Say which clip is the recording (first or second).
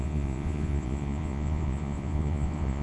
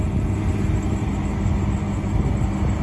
second